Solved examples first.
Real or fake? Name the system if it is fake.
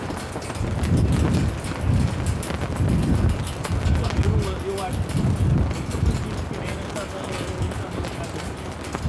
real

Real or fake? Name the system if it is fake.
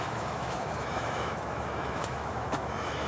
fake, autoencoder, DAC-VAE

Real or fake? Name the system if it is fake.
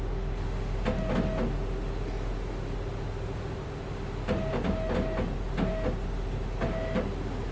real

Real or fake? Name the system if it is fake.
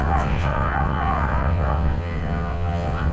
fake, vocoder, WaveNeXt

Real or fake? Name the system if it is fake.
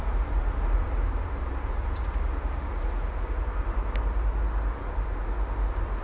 real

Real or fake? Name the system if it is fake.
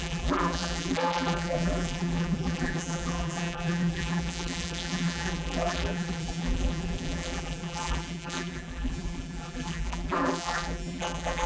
fake, vocoder, BigVGAN v2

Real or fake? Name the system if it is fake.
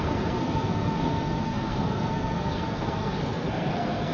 fake, codec, SNAC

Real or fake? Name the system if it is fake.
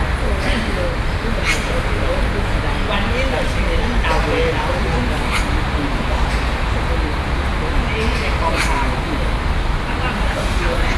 real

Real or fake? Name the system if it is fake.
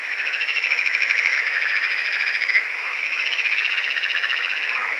fake, autoencoder, DAC-VAE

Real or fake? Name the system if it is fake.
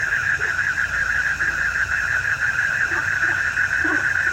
fake, vocoder, BigVGAN v2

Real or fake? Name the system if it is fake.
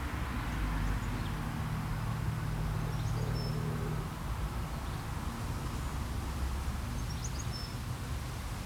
real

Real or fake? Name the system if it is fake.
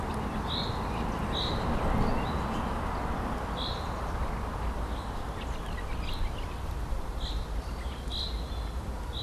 real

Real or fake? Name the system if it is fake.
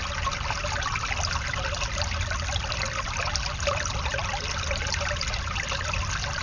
real